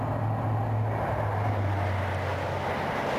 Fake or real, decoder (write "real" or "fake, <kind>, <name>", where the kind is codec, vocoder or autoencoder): real